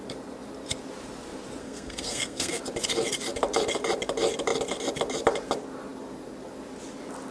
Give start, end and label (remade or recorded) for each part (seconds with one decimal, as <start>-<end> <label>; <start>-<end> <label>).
0.0-1.6 recorded; 1.6-2.6 remade; 2.6-7.3 recorded